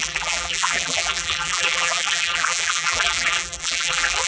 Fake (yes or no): yes